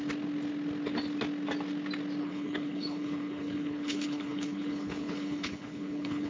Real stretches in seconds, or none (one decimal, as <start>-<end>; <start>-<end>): 0.0-2.2